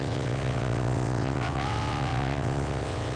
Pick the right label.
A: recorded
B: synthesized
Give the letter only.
B